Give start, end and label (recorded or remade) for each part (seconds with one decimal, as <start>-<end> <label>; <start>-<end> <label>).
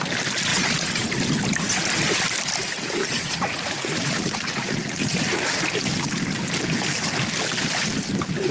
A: 0.0-0.5 recorded; 0.5-1.1 remade; 1.1-3.0 recorded; 3.0-5.6 remade; 5.6-8.5 recorded